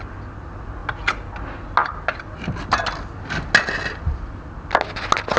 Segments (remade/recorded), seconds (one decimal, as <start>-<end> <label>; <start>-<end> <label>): 0.0-5.4 recorded